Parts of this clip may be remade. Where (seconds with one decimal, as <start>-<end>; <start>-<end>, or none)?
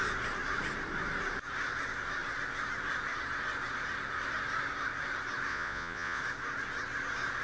5.5-6.2